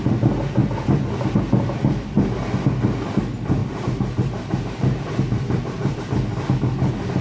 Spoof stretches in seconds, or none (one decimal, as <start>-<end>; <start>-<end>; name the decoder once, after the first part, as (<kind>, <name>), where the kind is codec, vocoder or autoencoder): 3.6-6.0 (vocoder, BigVGAN v2)